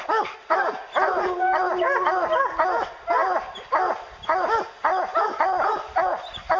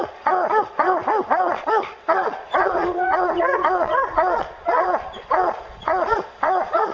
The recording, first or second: first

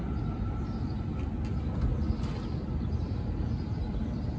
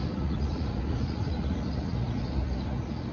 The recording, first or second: first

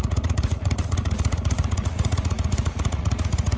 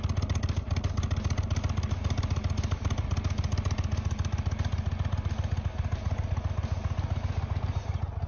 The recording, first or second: second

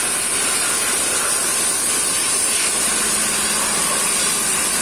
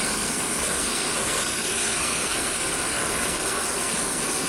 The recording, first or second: first